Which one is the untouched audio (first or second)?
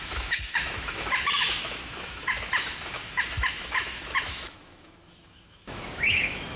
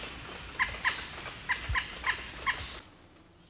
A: second